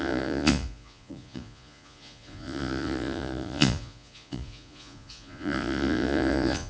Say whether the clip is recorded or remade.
remade